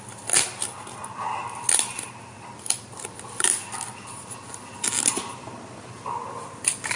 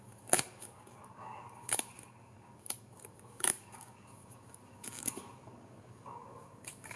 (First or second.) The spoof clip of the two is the second